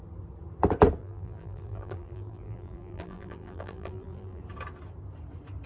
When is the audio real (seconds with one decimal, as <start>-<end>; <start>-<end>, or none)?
0.0-1.0; 4.4-5.7